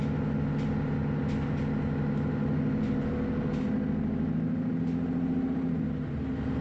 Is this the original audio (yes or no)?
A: yes